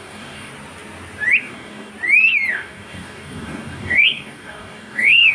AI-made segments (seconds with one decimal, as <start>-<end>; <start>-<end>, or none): 0.0-0.5; 1.4-1.9; 2.5-5.3